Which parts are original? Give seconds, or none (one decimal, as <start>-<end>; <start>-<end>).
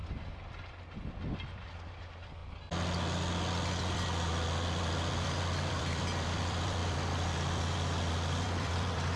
0.0-2.0; 2.4-3.8